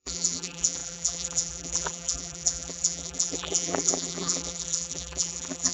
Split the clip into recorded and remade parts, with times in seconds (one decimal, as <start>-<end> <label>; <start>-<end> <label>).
0.0-5.7 remade